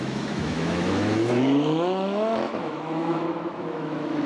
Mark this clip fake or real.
fake